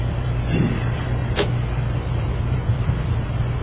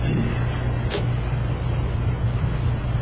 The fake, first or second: first